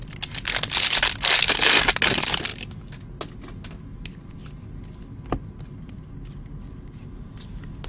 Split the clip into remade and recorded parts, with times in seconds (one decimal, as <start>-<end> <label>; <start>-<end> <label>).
0.0-7.9 recorded